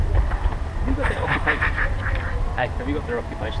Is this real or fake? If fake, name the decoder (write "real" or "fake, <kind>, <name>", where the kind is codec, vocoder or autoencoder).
real